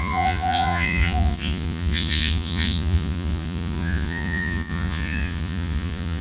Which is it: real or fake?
fake